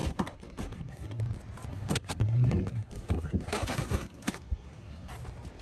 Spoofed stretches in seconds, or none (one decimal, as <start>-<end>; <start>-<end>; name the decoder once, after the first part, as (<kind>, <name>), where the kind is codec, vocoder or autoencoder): 0.0-1.2 (codec, SNAC); 1.7-5.1